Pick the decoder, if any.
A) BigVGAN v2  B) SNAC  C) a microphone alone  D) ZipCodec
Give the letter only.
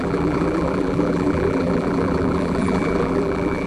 A